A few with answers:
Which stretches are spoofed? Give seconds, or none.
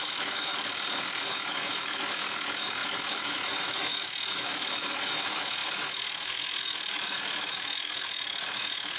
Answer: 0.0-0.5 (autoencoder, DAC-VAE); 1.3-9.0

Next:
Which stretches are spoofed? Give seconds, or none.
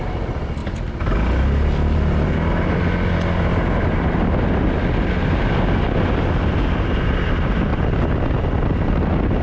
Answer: none